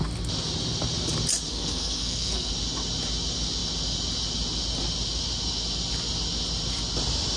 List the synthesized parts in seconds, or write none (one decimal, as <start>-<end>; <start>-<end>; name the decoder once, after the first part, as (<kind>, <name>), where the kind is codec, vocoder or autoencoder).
1.5-2.5 (codec, SNAC)